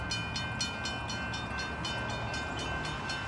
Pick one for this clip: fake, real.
real